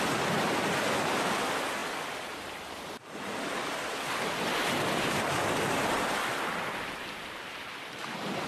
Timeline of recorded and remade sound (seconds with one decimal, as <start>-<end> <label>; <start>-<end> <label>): 0.0-8.5 recorded